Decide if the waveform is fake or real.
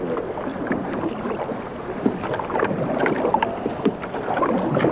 real